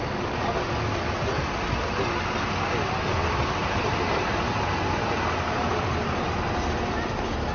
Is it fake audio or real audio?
real